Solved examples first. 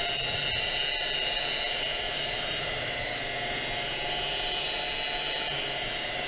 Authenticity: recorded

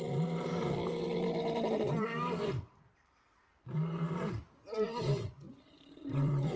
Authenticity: remade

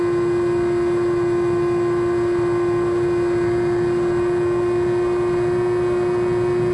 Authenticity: recorded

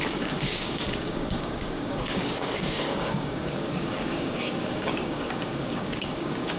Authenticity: remade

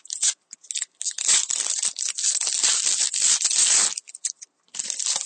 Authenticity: recorded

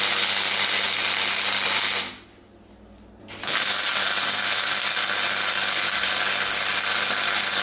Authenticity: recorded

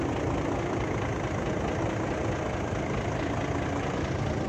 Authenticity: recorded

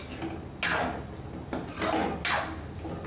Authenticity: recorded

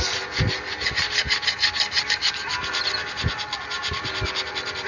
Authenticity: recorded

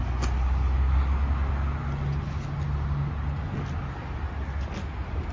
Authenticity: recorded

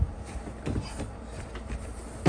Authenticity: remade